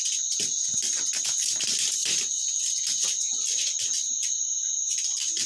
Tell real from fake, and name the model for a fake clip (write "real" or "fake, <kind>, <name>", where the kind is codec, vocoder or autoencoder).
real